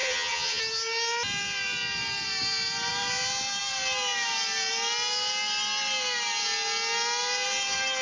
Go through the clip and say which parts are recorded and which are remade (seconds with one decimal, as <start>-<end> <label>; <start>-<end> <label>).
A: 0.0-0.6 remade; 0.6-8.0 recorded